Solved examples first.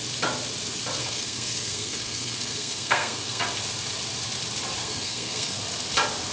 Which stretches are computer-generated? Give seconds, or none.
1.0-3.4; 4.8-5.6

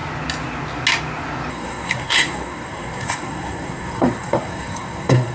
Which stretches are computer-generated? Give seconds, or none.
1.5-5.3

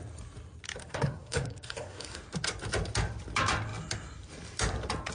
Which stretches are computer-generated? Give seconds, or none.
0.8-2.2

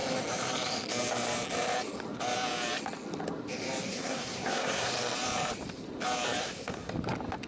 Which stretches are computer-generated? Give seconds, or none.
3.9-4.9; 6.4-6.9

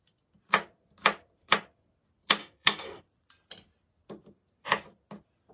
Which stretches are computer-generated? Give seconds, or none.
2.4-3.0

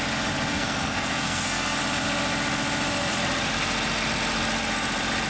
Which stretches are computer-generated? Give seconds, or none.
0.5-1.8

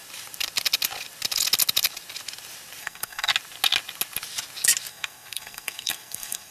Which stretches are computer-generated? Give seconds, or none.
2.8-3.3; 4.9-6.5